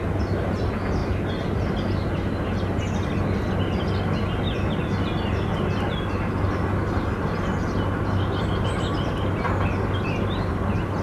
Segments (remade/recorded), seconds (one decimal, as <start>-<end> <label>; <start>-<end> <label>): 0.0-11.0 recorded

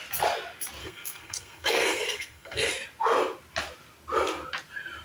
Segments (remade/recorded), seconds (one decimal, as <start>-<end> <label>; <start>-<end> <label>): 0.0-0.8 recorded; 0.8-2.7 remade; 2.7-5.0 recorded

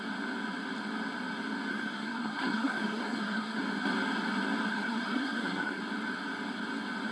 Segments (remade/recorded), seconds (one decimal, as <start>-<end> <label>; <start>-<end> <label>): 0.0-1.7 recorded; 1.7-3.6 remade; 3.6-4.7 recorded; 4.7-5.8 remade; 5.8-7.1 recorded

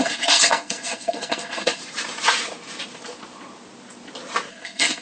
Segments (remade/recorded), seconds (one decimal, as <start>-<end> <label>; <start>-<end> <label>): 0.0-1.8 remade; 1.8-4.5 recorded; 4.5-5.0 remade

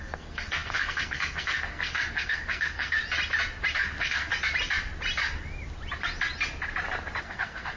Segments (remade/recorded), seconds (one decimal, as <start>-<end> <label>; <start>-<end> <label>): 0.0-3.0 remade; 3.0-3.7 recorded; 3.7-4.3 remade; 4.3-7.2 recorded; 7.2-7.8 remade

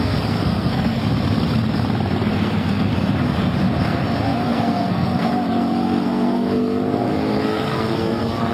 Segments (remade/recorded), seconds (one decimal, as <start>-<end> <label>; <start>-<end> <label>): 0.0-1.0 remade; 1.0-2.3 recorded; 2.3-2.9 remade; 2.9-3.8 recorded; 3.8-8.5 remade

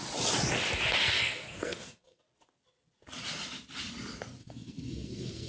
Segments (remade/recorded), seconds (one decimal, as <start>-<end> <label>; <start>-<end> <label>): 0.0-1.0 recorded; 1.0-2.2 remade; 2.2-4.4 recorded; 4.4-5.5 remade